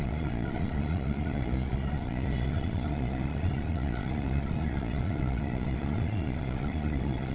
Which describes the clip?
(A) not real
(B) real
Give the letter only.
A